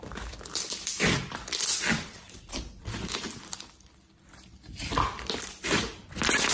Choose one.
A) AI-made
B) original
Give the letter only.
B